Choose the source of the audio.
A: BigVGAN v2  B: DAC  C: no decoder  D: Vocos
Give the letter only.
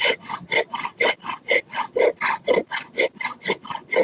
C